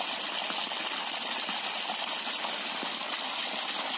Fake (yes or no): no